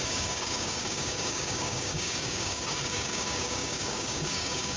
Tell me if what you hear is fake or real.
fake